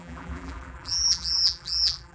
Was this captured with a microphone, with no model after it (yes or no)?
no